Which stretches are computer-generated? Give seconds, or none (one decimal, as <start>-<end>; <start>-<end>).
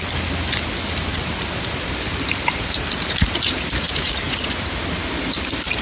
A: 1.1-4.5